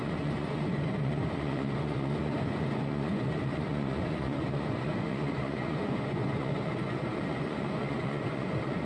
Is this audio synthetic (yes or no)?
yes